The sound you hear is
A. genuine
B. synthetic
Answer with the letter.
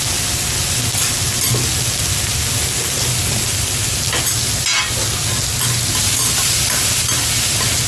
A